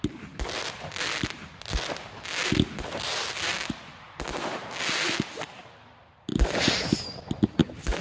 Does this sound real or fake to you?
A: real